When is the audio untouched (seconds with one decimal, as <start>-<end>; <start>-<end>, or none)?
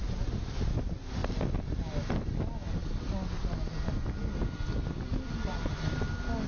0.0-6.5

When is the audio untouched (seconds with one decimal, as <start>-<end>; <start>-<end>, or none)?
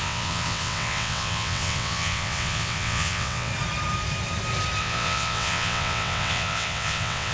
3.5-4.8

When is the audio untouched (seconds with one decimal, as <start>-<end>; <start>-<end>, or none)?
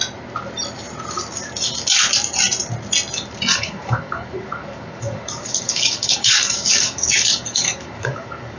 0.0-3.5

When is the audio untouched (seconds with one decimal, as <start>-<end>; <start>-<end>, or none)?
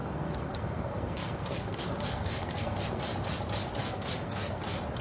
3.0-3.8; 4.6-5.0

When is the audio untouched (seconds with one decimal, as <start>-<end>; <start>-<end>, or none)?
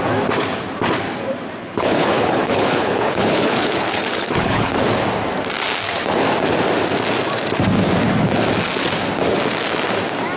0.0-1.6; 4.7-10.4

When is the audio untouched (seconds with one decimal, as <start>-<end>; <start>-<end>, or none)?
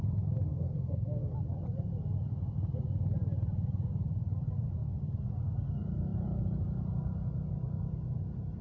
0.0-0.5; 1.2-8.6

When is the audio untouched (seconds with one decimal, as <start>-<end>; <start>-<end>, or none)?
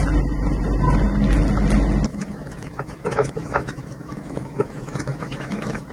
0.0-2.1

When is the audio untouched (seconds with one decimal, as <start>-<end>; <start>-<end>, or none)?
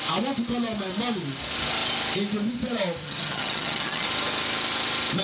0.0-3.0; 4.1-5.2